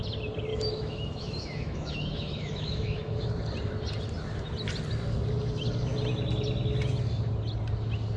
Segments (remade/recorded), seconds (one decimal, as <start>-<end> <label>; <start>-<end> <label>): 0.0-0.5 recorded; 0.5-3.3 remade; 3.3-8.2 recorded